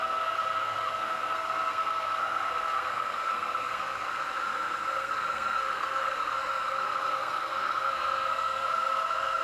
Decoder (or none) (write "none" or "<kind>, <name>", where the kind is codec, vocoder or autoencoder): codec, SNAC